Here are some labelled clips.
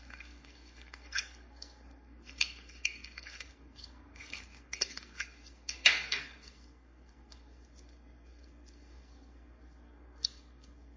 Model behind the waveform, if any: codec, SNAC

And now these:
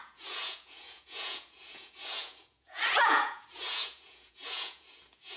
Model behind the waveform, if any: vocoder, Vocos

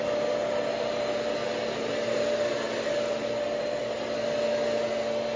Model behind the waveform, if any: none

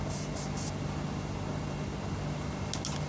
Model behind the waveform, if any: none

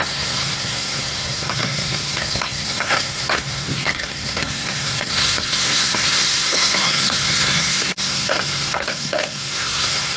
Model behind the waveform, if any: codec, SNAC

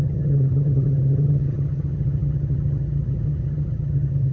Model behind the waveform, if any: vocoder, HiFi-GAN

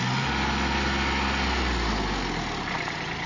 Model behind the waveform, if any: none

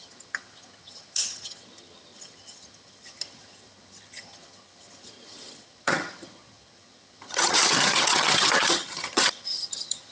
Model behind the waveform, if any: vocoder, HiFi-GAN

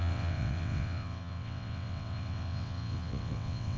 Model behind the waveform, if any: vocoder, WaveNeXt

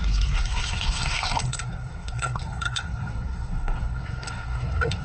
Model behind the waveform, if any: codec, SNAC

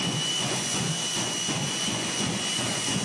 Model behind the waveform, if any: vocoder, Vocos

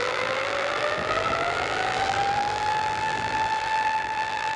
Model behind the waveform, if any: vocoder, BigVGAN v2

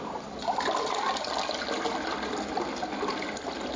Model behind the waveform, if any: none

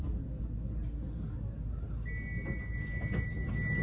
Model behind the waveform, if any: none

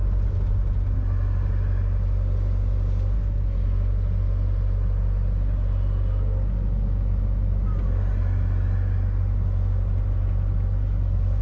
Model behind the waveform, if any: none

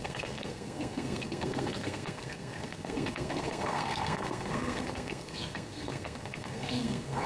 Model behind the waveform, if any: codec, SNAC